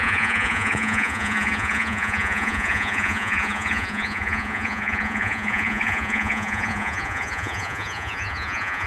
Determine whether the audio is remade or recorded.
remade